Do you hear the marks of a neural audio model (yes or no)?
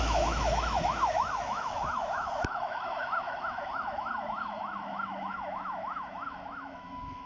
yes